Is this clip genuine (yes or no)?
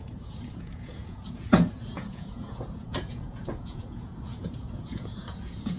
no